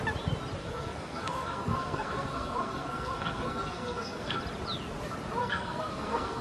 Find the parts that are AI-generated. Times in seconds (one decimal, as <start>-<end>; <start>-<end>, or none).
0.6-4.4; 5.4-6.4

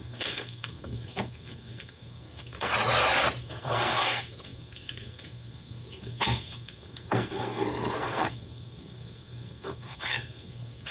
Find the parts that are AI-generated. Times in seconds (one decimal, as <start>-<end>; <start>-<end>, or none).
0.0-2.7; 3.4-10.9

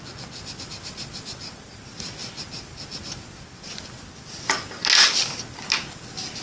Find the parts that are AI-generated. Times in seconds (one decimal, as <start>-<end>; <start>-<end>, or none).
none

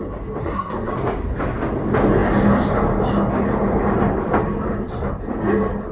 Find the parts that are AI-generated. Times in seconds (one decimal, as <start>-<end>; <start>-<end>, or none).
0.4-0.9

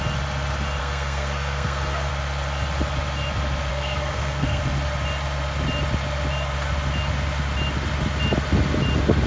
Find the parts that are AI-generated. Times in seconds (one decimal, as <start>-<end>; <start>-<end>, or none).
0.8-2.1; 3.7-4.6

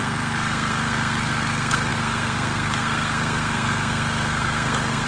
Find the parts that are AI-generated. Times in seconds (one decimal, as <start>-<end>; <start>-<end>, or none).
0.0-5.1

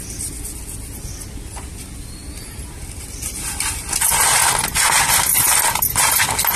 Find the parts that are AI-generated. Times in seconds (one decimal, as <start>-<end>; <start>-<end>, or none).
none